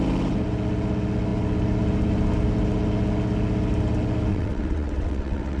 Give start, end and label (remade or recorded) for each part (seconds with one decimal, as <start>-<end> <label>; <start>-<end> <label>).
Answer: 0.0-4.3 recorded; 4.3-5.6 remade